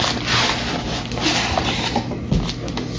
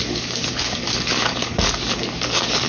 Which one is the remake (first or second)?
second